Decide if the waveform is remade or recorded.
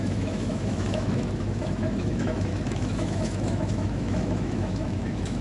remade